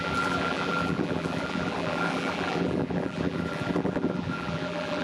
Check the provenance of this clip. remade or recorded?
remade